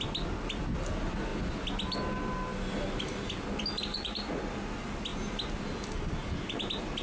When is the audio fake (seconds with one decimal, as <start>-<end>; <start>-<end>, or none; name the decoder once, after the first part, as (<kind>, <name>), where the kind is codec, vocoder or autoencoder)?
3.9-4.4 (vocoder, Vocos)

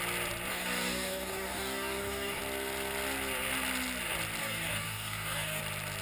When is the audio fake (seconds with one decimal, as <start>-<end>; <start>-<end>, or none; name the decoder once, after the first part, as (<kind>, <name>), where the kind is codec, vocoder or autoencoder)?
0.5-2.4 (codec, DAC); 4.4-5.6